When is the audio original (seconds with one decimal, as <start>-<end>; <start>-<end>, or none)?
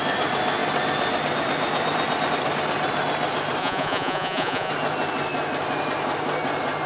0.0-3.6; 4.7-6.9